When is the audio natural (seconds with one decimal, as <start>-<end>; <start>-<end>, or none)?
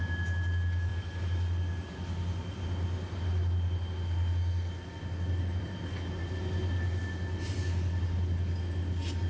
0.0-9.3